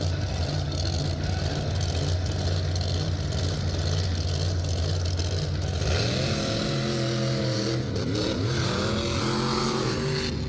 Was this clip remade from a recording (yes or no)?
no